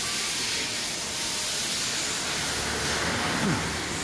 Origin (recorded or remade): recorded